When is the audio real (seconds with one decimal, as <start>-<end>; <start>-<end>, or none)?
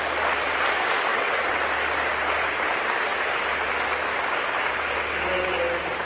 0.0-1.1; 1.6-6.1